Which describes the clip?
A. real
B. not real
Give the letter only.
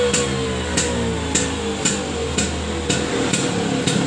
A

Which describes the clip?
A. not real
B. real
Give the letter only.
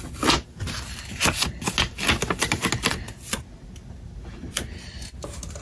B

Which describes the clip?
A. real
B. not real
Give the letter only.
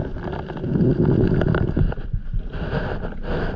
A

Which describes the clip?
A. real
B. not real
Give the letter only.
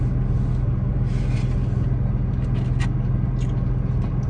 A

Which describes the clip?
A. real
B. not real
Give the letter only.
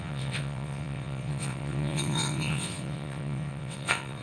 B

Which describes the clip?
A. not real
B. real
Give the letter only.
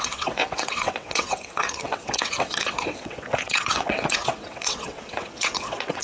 A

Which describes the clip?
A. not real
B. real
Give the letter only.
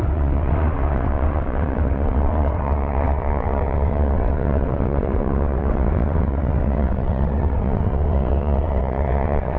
A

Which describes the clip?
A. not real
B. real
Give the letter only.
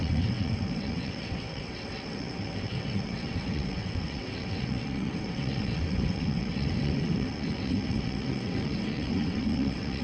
A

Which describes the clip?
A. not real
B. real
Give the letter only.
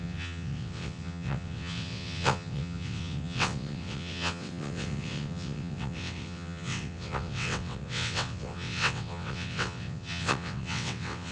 A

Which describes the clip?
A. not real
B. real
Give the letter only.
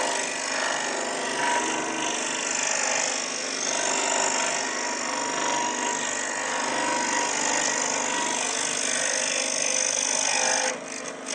B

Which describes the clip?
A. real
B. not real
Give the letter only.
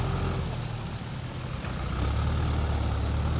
A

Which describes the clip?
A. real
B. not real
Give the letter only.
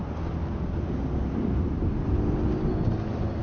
A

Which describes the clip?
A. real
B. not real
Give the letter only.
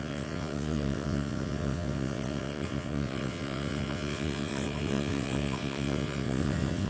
B